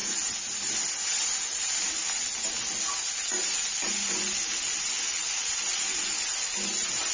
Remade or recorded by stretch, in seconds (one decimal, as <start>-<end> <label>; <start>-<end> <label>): 0.0-7.1 recorded